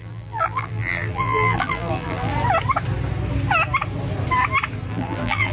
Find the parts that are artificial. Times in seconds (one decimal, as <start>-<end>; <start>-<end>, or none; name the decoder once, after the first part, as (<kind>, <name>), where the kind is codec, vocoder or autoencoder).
0.0-2.3 (vocoder, BigVGAN v2); 4.9-5.5